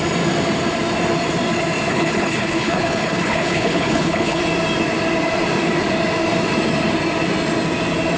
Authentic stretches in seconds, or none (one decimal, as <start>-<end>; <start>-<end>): 0.0-1.9; 4.4-8.2